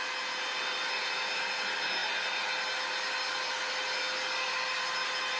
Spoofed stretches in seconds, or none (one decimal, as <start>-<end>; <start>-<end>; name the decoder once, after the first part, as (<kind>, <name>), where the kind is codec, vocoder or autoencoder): none

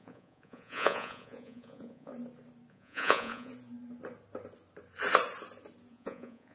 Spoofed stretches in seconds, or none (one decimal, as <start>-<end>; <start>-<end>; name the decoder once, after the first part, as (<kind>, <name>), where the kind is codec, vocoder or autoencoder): 0.0-2.1 (vocoder, Vocos); 2.7-3.5; 5.9-6.5

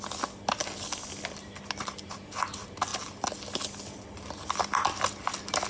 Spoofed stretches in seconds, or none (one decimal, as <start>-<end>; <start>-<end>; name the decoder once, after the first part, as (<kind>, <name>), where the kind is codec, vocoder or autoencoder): none

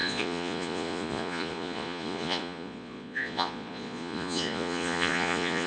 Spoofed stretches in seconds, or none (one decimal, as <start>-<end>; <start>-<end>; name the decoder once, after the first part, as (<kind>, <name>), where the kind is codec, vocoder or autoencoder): 0.0-5.7 (vocoder, Vocos)

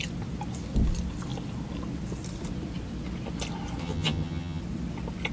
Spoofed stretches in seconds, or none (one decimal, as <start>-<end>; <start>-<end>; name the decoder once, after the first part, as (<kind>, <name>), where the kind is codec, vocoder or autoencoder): 3.8-4.6 (vocoder, HiFi-GAN)

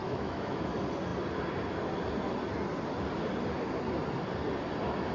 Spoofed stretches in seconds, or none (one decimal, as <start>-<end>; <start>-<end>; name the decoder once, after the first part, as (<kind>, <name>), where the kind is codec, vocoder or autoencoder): 0.0-0.7 (autoencoder, DAC-VAE)

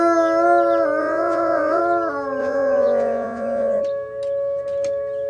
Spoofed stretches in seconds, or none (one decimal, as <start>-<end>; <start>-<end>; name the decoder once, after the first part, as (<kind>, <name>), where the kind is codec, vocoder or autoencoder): 1.0-1.8 (vocoder, Vocos); 2.4-3.8